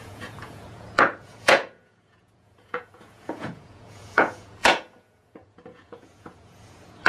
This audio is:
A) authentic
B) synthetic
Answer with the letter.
B